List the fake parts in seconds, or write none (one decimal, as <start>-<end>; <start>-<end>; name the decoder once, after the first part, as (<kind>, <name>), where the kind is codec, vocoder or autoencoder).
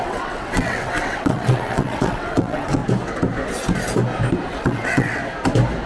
0.0-2.8 (vocoder, WaveNeXt); 4.5-5.2